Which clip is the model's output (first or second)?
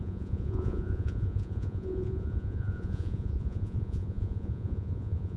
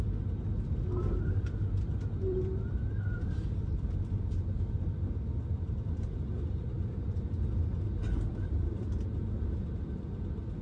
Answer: first